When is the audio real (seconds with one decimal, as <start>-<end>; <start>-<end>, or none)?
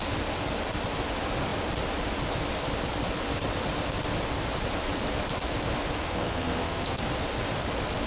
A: 0.0-6.0; 7.0-8.1